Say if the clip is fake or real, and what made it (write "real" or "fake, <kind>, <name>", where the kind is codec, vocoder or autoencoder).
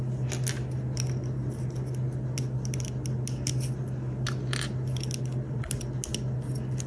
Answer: real